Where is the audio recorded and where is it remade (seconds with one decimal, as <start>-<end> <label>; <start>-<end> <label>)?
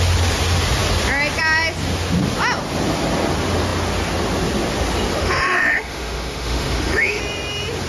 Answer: 0.0-5.2 recorded; 5.2-7.2 remade; 7.2-7.9 recorded